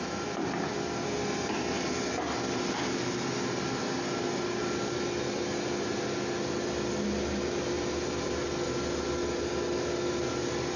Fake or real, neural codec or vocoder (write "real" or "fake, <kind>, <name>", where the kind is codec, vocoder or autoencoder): real